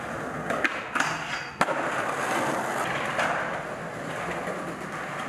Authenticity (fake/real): real